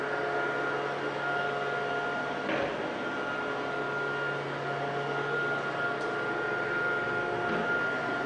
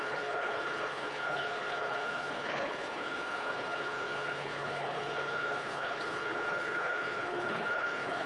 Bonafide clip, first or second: first